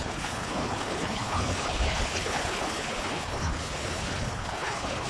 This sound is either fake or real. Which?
fake